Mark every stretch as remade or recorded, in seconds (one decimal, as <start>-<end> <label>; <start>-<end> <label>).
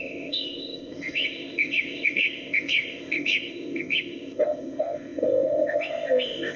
0.0-6.6 remade